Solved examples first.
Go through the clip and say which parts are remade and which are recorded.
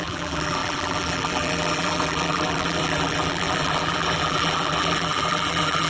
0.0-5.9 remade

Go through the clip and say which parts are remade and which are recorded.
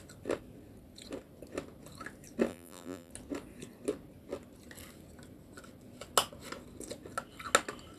0.0-2.5 recorded; 2.5-3.1 remade; 3.1-8.0 recorded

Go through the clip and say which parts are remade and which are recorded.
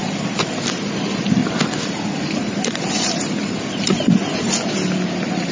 0.0-0.7 remade; 0.7-1.4 recorded; 1.4-4.7 remade; 4.7-5.5 recorded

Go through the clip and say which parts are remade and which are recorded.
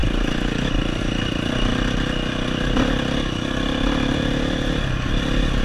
0.0-5.6 recorded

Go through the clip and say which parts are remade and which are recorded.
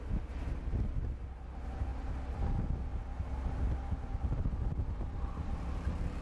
0.0-4.1 recorded; 4.1-5.6 remade; 5.6-6.2 recorded